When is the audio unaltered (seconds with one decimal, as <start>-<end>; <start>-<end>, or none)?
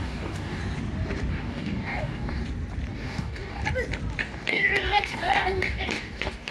0.6-1.3; 2.4-2.9; 3.6-4.2